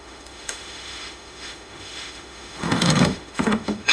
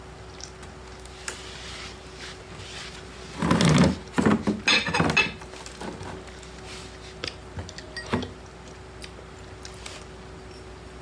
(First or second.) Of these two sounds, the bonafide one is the second